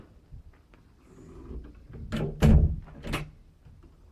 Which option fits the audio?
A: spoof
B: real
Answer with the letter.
B